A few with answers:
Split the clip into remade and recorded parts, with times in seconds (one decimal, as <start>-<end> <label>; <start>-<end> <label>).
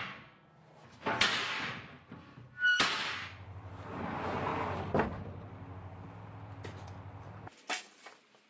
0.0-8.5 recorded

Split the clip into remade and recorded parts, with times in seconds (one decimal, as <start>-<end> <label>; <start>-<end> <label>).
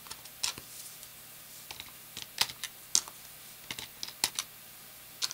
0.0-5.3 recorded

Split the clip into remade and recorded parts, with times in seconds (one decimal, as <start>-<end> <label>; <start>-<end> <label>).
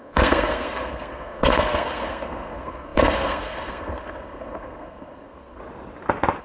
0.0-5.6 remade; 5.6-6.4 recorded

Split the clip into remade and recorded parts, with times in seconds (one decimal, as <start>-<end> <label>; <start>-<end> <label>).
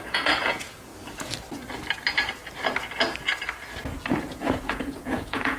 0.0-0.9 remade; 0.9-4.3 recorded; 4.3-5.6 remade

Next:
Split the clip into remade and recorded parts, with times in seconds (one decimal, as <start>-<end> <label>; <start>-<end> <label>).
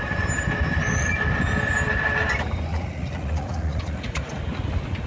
0.0-2.7 recorded; 2.7-4.4 remade; 4.4-5.1 recorded